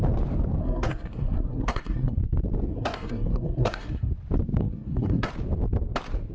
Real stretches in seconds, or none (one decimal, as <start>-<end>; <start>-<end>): 0.0-0.6; 2.2-2.7; 4.1-4.6; 5.3-6.3